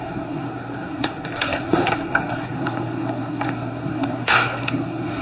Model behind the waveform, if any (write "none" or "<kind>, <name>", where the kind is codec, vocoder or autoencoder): codec, SNAC